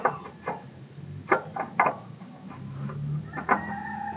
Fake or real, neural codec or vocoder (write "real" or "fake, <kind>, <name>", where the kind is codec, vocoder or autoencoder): real